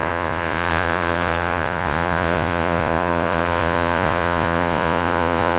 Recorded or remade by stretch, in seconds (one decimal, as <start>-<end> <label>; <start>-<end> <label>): 0.0-5.6 remade